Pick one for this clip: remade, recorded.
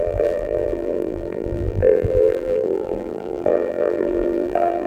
remade